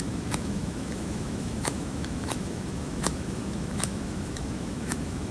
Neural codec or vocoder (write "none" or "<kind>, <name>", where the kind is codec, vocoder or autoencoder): autoencoder, DAC-VAE